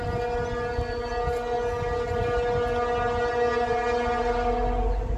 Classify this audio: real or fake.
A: real